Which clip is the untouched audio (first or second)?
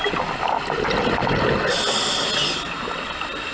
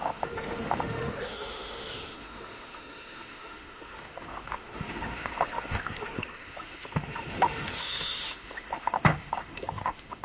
first